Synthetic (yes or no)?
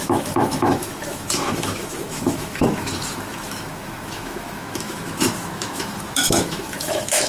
yes